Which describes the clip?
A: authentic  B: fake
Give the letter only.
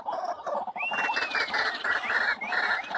A